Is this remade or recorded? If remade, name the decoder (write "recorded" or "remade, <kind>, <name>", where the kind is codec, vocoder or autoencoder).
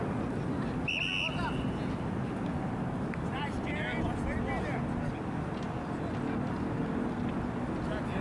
recorded